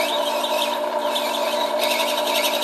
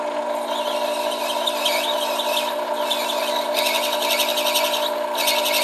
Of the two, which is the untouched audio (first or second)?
second